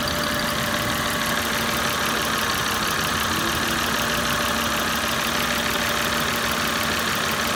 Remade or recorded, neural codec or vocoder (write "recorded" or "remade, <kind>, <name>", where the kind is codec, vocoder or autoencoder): recorded